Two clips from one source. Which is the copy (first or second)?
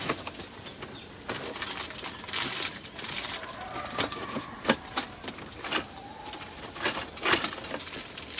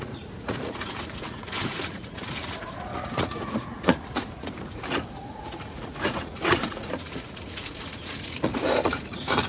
second